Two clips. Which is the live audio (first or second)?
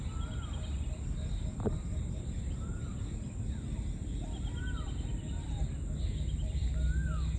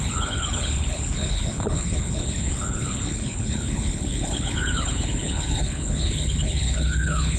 first